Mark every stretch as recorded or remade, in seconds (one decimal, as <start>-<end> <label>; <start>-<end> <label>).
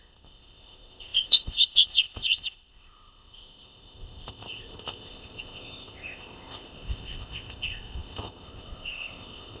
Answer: 0.0-9.6 remade